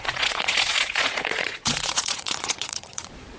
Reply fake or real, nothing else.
fake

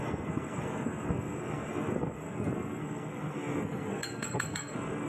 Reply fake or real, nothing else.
fake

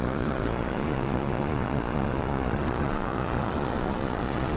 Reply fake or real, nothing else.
fake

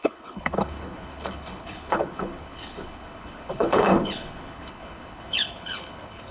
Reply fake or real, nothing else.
fake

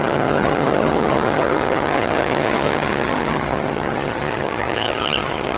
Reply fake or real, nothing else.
fake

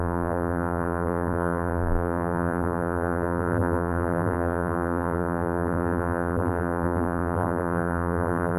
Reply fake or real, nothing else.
fake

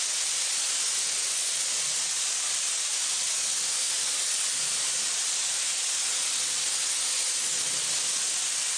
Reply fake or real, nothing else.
real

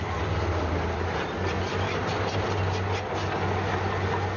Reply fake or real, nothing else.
real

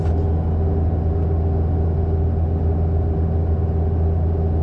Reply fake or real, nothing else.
real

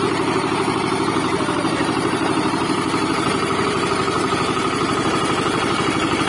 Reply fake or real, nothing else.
fake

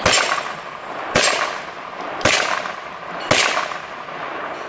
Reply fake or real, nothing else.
real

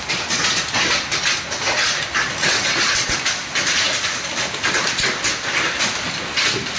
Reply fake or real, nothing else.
real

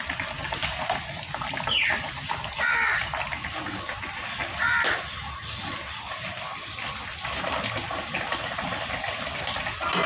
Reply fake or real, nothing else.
real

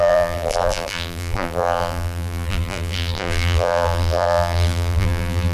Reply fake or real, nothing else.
fake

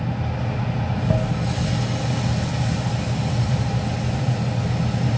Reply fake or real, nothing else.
real